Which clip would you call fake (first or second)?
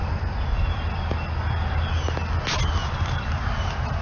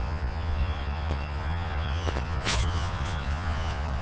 second